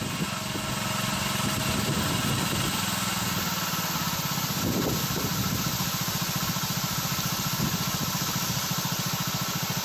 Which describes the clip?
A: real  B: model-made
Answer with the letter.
A